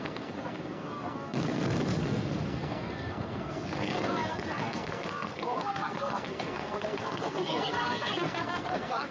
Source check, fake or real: fake